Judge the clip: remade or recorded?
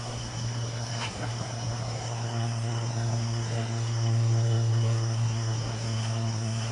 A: remade